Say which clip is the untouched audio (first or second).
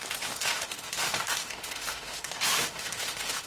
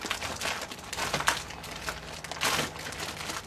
second